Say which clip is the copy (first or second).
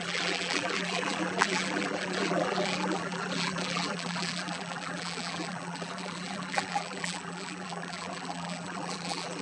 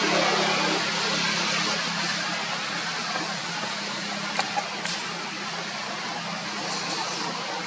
first